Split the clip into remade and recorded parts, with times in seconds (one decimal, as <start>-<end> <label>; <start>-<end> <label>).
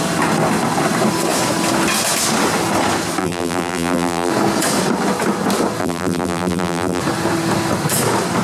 0.0-3.2 recorded; 3.2-4.3 remade; 4.3-5.8 recorded; 5.8-7.0 remade; 7.0-8.4 recorded